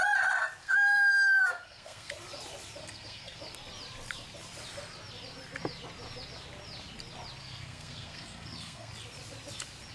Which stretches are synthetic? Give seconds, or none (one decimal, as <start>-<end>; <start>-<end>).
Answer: 0.6-2.1; 2.8-3.4; 7.4-8.9